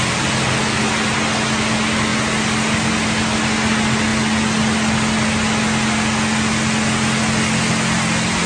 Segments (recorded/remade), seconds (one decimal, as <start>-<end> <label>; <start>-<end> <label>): 0.0-0.6 remade; 0.6-8.5 recorded